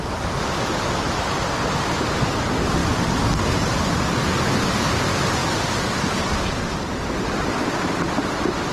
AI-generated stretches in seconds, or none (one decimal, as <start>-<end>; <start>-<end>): none